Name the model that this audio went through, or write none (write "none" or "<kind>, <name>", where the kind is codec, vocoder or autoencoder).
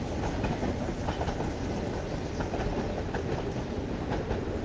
none